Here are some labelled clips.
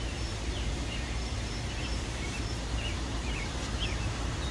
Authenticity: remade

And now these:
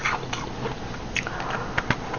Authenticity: recorded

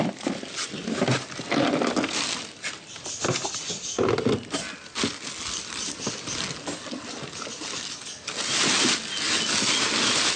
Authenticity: recorded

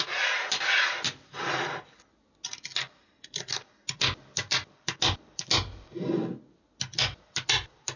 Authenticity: recorded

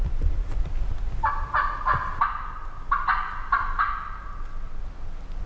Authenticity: recorded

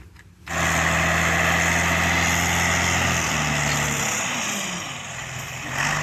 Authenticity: recorded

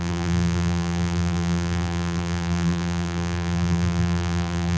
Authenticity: remade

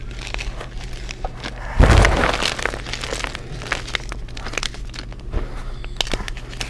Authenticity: recorded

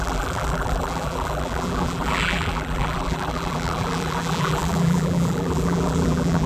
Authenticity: remade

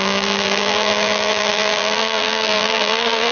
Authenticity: remade